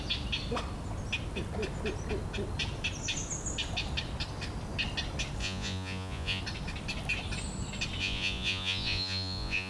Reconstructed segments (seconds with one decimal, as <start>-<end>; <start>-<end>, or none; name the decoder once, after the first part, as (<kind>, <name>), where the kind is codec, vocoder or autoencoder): 5.4-6.4 (vocoder, Vocos); 8.0-9.7